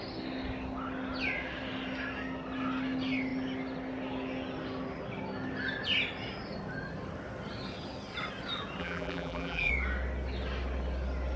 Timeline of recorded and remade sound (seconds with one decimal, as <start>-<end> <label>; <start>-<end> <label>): 0.0-8.8 recorded; 8.8-9.7 remade; 9.7-11.4 recorded